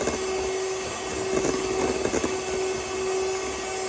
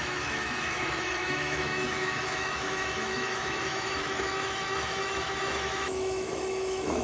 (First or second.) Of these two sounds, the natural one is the first